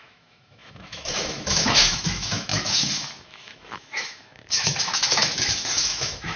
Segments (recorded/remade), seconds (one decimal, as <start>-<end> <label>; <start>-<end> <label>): 0.0-6.4 remade

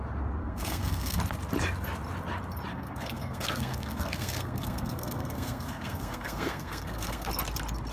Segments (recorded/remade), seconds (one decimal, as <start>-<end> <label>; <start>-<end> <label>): 0.0-0.4 recorded; 0.4-1.2 remade; 1.2-2.7 recorded; 2.7-7.3 remade; 7.3-7.9 recorded

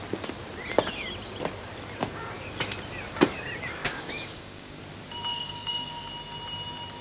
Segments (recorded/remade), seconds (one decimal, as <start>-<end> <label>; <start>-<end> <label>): 0.0-3.8 recorded; 3.8-4.8 remade; 4.8-5.3 recorded; 5.3-6.1 remade; 6.1-7.0 recorded

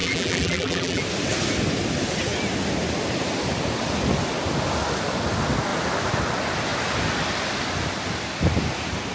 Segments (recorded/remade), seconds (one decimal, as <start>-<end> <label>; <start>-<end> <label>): 0.0-1.0 remade; 1.0-9.1 recorded